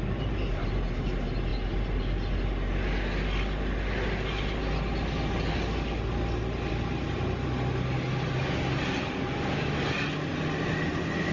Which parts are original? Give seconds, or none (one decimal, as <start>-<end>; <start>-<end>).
0.0-11.3